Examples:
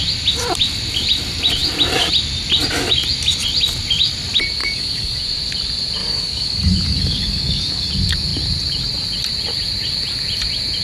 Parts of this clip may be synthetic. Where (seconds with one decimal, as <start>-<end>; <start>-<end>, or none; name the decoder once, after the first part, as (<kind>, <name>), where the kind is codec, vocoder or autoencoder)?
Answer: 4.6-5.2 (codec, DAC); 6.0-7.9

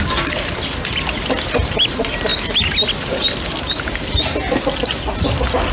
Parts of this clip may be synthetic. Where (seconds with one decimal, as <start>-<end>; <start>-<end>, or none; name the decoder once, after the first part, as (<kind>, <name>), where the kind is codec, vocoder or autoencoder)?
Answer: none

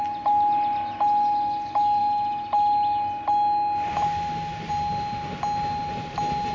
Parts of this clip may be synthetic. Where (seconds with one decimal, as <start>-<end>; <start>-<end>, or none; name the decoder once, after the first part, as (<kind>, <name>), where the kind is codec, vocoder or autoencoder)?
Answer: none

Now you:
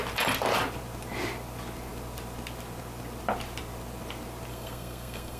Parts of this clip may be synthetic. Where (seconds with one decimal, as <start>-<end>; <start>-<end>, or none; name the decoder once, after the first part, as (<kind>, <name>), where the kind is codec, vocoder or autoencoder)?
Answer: 4.5-5.4 (codec, SNAC)

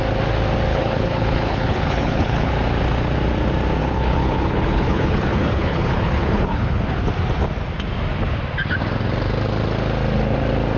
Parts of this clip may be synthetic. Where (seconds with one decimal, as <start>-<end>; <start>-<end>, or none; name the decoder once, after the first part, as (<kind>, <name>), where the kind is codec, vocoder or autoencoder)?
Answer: 0.7-2.5 (codec, HILCodec); 3.8-6.8

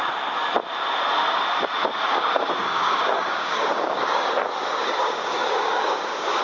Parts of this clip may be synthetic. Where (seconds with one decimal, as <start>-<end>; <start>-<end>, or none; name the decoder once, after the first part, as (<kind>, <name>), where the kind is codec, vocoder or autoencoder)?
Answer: 1.9-4.3 (codec, DAC); 4.8-6.4